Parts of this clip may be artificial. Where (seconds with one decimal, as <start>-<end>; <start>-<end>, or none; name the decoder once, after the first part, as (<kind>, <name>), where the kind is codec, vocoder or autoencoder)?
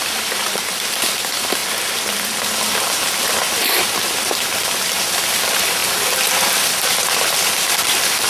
0.0-1.6 (vocoder, BigVGAN v2); 5.1-8.3